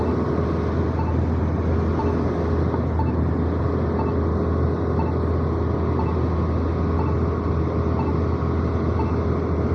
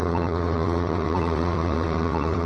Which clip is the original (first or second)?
first